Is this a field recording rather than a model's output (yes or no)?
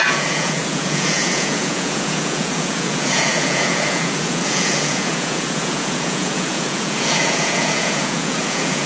no